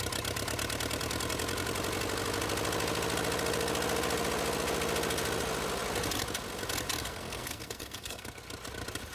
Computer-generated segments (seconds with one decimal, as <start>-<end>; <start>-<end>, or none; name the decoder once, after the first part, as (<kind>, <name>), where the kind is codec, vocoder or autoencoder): 7.0-8.4 (codec, SNAC)

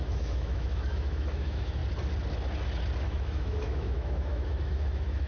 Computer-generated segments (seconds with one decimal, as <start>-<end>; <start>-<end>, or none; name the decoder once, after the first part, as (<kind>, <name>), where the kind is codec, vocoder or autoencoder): 0.0-1.8 (autoencoder, DAC-VAE); 3.0-5.3